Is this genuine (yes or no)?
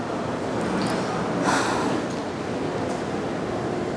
yes